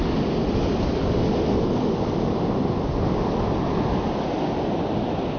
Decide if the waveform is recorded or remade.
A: recorded